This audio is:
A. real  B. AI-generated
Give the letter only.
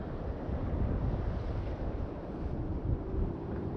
A